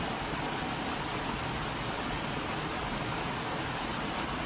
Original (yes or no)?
yes